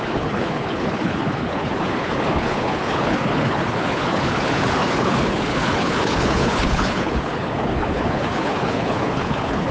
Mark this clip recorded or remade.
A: remade